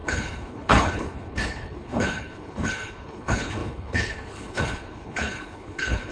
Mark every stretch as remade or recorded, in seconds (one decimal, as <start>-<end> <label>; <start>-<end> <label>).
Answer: 0.0-6.1 remade